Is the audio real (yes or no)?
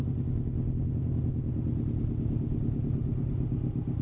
yes